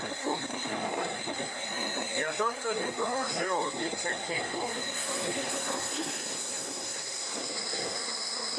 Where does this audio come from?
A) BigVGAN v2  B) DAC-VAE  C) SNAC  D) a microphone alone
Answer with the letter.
C